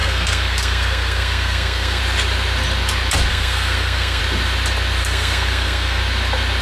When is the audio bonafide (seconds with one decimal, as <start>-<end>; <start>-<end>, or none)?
2.0-3.3; 4.2-5.0; 6.0-6.6